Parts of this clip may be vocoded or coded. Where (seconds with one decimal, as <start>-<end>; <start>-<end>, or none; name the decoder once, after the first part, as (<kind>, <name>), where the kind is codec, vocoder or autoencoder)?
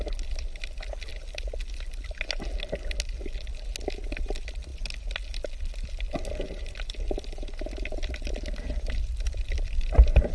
none